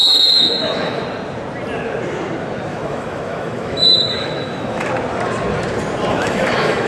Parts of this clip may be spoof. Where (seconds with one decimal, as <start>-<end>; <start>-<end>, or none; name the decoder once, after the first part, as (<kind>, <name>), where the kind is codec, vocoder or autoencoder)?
0.0-1.0 (autoencoder, DAC-VAE); 2.7-4.9; 6.1-6.9